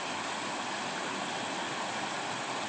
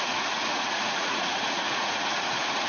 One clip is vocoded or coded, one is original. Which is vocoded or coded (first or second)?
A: second